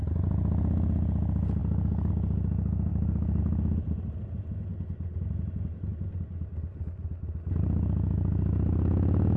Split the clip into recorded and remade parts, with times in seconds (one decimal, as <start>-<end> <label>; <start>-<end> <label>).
0.0-1.6 recorded; 1.6-2.1 remade; 2.1-2.9 recorded; 2.9-3.4 remade; 3.4-9.4 recorded